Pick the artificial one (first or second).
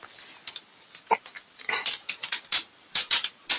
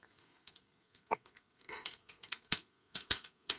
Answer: second